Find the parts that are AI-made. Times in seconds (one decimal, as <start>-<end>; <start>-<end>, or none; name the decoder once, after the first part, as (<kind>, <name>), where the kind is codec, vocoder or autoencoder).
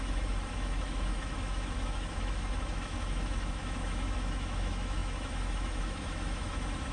0.0-6.9 (autoencoder, DAC-VAE)